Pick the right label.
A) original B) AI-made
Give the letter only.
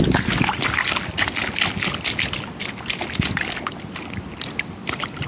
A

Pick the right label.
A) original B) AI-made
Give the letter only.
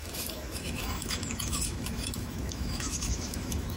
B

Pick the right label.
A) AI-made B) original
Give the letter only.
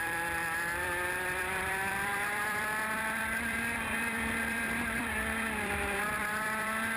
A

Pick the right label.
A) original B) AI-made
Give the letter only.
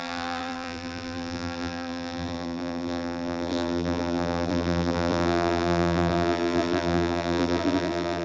B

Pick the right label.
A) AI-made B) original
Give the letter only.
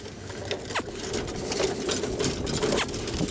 B